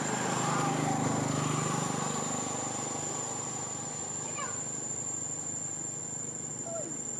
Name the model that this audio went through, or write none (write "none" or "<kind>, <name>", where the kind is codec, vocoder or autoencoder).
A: none